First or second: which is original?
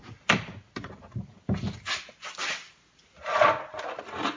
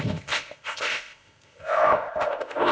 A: first